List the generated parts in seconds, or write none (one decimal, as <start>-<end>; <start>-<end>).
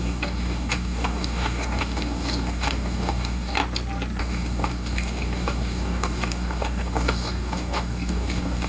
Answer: 0.0-3.6; 4.2-8.7